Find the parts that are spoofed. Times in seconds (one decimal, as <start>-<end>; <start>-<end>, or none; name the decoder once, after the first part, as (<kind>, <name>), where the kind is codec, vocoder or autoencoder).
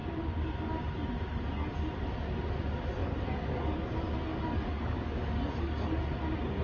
3.0-3.9 (codec, DAC); 4.3-5.9